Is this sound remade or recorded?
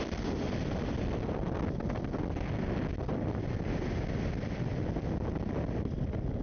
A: recorded